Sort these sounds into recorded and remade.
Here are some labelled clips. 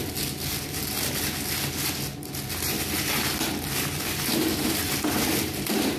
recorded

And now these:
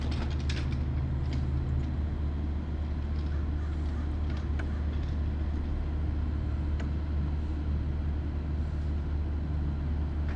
recorded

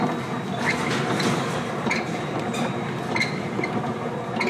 recorded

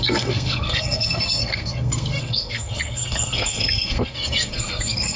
remade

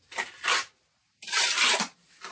recorded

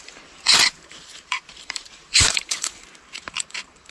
remade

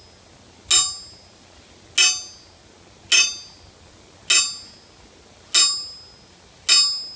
recorded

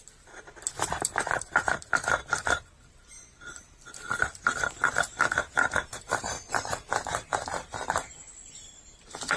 remade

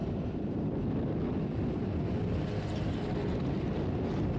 recorded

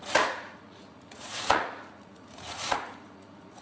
remade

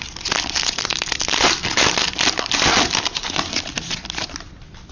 remade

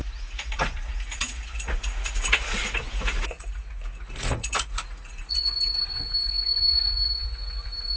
remade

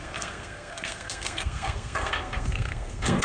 remade